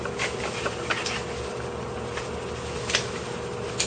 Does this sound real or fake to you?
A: real